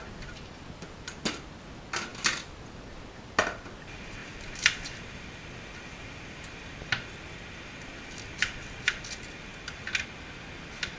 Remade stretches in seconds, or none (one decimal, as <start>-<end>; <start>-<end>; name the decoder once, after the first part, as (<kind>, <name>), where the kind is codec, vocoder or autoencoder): none

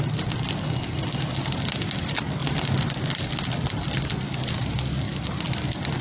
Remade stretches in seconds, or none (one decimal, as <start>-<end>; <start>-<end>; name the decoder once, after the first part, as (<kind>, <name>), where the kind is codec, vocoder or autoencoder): none